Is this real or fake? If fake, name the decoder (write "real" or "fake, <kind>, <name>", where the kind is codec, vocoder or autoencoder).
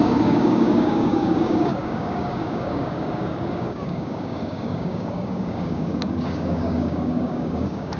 fake, codec, DAC